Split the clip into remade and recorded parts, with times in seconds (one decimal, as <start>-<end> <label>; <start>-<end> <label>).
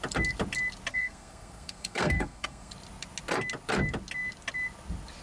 0.0-0.9 recorded; 0.9-2.7 remade; 2.7-5.2 recorded